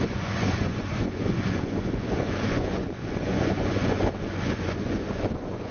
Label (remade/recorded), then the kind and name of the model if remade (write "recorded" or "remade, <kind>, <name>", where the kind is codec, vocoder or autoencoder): remade, vocoder, Vocos